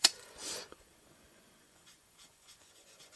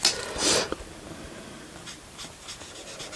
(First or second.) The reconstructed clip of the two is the first